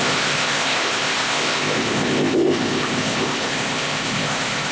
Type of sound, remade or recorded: remade